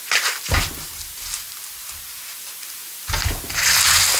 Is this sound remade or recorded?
recorded